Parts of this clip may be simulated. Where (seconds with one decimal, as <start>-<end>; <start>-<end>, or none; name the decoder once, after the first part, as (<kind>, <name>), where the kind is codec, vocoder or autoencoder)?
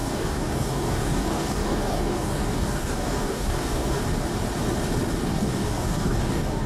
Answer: 0.0-4.0 (codec, DAC); 5.2-6.7